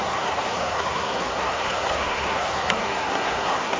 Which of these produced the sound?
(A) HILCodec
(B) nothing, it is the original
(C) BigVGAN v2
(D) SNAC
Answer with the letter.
D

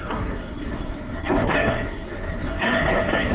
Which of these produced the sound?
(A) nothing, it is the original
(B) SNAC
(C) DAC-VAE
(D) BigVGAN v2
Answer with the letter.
B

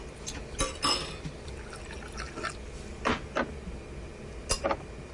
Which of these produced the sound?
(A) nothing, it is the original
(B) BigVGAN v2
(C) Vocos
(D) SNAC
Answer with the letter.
A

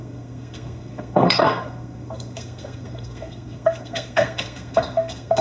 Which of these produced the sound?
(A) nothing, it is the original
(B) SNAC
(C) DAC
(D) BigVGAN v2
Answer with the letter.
B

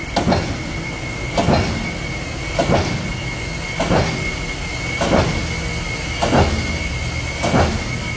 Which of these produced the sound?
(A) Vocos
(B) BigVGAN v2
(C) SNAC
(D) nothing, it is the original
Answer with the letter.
D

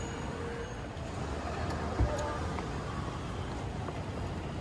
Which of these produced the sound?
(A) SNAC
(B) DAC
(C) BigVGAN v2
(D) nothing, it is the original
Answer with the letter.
D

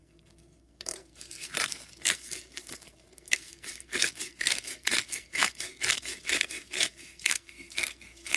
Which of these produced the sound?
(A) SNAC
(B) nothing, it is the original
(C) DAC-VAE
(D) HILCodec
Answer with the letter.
A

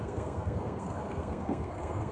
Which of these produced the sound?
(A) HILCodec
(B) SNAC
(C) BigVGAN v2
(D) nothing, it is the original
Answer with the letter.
B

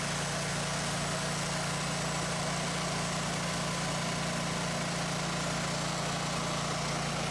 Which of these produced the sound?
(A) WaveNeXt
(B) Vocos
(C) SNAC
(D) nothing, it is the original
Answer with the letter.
D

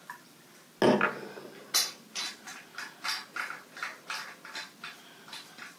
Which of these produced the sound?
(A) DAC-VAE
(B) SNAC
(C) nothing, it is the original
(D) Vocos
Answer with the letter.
C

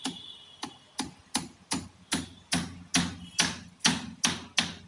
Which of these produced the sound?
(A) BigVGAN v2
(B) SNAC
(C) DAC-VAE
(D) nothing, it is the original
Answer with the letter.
D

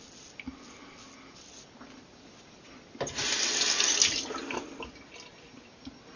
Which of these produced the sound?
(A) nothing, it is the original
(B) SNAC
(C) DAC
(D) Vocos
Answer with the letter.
A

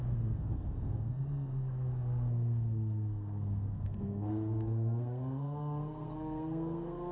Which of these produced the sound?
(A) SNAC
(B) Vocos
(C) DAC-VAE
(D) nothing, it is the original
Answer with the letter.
A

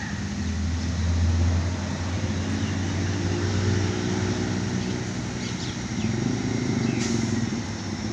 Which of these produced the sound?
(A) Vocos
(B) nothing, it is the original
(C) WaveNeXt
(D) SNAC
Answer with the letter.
B